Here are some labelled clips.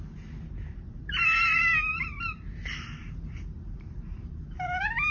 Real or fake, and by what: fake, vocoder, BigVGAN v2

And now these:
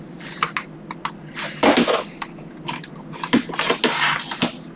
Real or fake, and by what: real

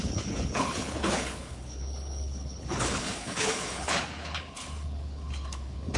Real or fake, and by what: fake, codec, HILCodec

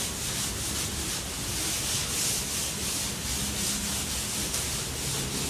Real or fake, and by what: real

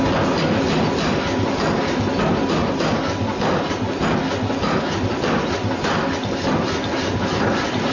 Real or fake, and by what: real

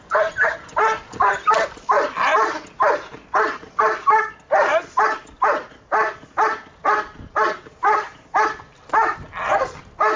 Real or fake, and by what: real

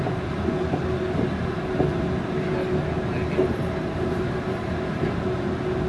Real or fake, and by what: real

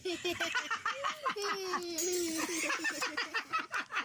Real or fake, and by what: real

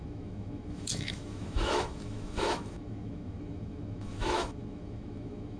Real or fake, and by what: fake, autoencoder, DAC-VAE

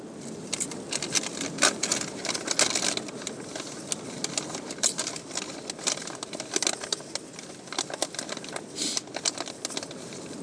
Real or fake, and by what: real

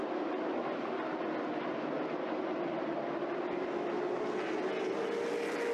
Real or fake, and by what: real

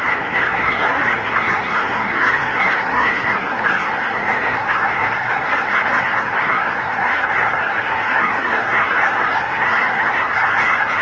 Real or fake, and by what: fake, codec, SNAC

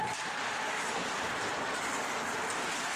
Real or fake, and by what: real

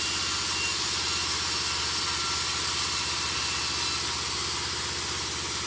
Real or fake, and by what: real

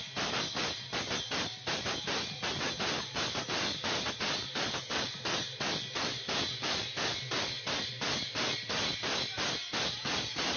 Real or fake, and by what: real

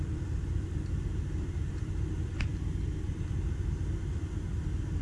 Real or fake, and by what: real